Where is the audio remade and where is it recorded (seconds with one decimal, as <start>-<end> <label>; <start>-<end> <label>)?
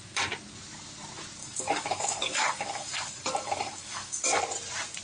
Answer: 0.0-1.4 recorded; 1.4-4.4 remade; 4.4-5.0 recorded